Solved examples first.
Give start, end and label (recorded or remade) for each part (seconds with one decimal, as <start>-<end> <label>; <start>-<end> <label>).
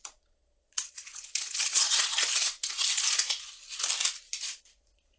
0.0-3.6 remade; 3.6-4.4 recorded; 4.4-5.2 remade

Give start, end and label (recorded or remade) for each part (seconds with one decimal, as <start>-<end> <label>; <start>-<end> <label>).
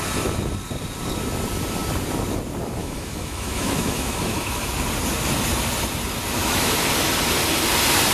0.0-2.8 recorded; 2.8-4.7 remade; 4.7-6.4 recorded; 6.4-6.9 remade; 6.9-8.1 recorded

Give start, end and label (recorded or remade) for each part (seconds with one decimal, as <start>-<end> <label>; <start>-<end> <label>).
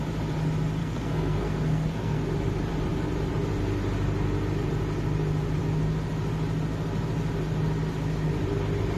0.0-0.8 recorded; 0.8-2.3 remade; 2.3-9.0 recorded